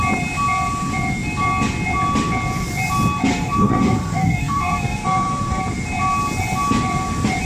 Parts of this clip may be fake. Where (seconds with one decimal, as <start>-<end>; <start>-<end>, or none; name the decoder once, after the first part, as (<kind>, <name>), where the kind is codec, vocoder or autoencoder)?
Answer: 3.3-5.6 (codec, SNAC)